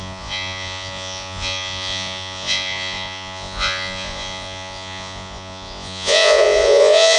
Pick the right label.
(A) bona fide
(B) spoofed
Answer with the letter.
B